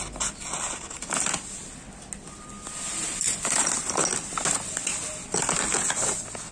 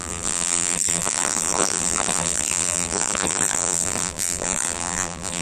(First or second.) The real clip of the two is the first